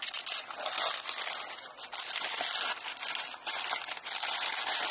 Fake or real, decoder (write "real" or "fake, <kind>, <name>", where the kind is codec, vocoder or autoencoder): real